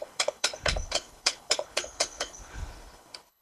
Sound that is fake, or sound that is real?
fake